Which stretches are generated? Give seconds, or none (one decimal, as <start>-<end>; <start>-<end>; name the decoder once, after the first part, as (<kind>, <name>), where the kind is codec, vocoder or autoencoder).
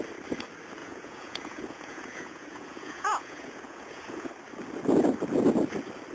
0.8-4.3 (vocoder, Vocos)